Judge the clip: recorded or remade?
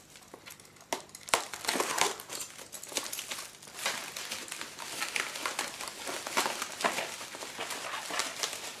recorded